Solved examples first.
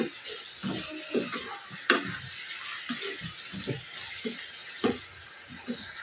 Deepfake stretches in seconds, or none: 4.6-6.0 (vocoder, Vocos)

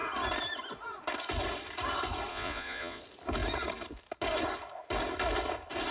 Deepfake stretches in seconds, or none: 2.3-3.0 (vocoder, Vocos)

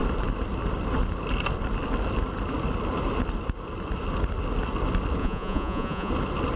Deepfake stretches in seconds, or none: 5.2-6.1 (vocoder, Vocos)

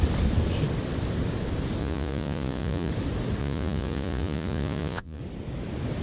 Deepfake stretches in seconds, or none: 1.8-2.9 (vocoder, Vocos); 3.4-5.2